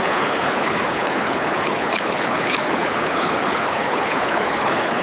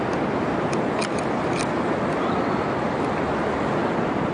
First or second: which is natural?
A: second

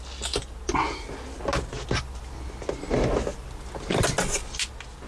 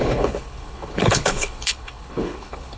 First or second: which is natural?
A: first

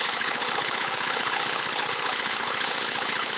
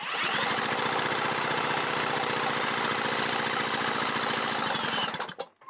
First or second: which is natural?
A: second